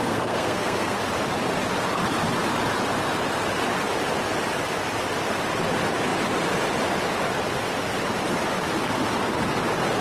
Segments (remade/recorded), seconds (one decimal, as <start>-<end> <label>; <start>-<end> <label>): 0.0-1.0 remade; 1.0-10.0 recorded

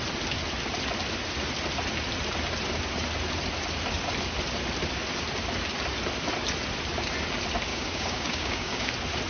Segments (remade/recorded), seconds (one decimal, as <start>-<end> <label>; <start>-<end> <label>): 0.0-7.7 recorded; 7.7-8.9 remade; 8.9-9.3 recorded